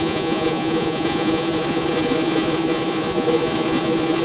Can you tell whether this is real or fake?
fake